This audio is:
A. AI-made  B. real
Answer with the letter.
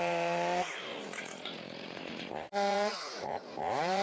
A